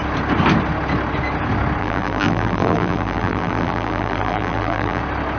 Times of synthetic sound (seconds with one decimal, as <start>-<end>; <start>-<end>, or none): 1.8-5.0